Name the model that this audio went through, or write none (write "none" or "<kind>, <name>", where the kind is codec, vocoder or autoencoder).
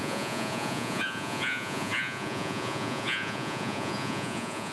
vocoder, Vocos